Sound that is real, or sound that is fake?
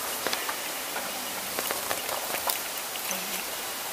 fake